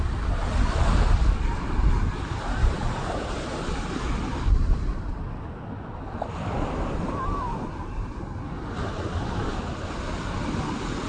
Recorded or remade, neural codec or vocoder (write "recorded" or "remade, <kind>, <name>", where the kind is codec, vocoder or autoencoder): recorded